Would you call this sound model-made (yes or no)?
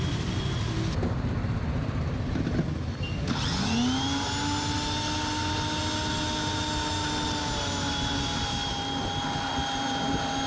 no